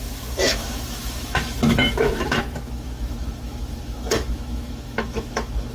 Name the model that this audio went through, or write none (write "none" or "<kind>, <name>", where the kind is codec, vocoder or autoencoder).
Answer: autoencoder, DAC-VAE